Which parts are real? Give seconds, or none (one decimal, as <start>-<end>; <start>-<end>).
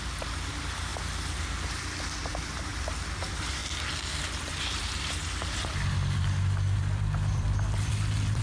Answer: 0.9-2.2; 3.6-4.4